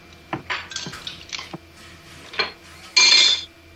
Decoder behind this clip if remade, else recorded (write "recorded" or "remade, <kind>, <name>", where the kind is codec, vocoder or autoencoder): recorded